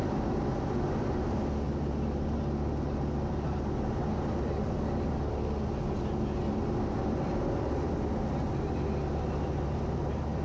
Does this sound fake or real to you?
real